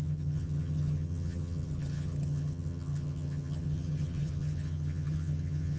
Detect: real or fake fake